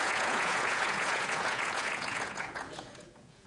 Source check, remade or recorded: remade